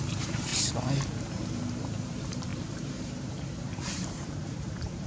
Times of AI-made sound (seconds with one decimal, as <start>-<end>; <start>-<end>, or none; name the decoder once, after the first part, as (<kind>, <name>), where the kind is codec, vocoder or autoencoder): 0.0-0.5 (vocoder, BigVGAN v2); 1.2-5.1